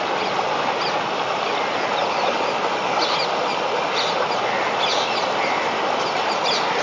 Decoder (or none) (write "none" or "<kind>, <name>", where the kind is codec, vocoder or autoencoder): none